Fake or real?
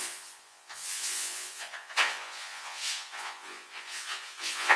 fake